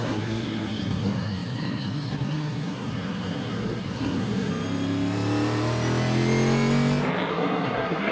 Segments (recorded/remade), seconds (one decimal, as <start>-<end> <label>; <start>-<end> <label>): 0.0-4.5 remade; 4.5-7.3 recorded; 7.3-8.1 remade